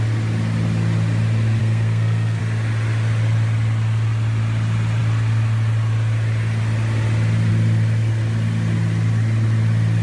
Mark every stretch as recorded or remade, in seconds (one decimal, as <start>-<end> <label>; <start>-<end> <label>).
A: 0.0-1.6 recorded; 1.6-2.4 remade; 2.4-10.0 recorded